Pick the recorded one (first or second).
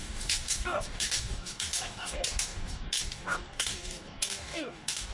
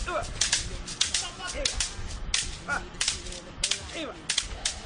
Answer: second